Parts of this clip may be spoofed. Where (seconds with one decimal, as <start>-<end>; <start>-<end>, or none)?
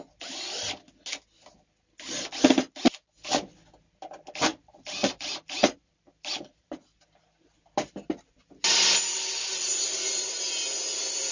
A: 4.5-6.7